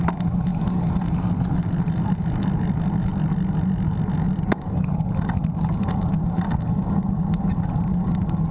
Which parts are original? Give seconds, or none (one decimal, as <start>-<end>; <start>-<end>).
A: 0.0-8.5